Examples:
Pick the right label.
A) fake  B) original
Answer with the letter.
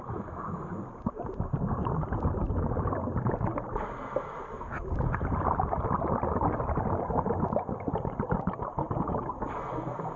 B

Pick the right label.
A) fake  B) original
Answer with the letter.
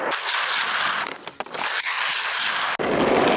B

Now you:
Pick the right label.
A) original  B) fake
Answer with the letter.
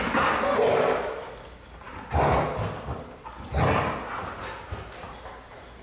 A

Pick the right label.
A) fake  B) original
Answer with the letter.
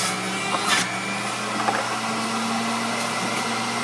B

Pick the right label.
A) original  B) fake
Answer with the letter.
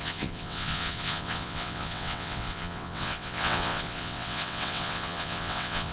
B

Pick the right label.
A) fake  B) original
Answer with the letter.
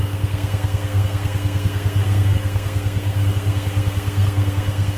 A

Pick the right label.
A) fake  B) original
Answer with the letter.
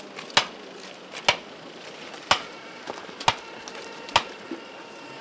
B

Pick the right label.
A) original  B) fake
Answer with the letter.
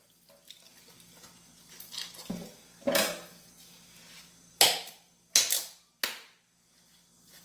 A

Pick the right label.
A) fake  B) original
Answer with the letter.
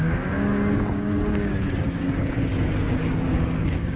A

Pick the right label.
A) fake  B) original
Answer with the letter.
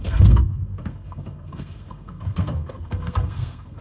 A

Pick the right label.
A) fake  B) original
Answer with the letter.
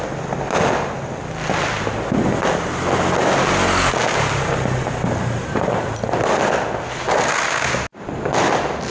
B